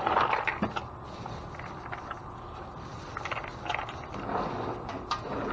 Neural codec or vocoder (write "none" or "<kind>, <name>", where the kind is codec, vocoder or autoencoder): none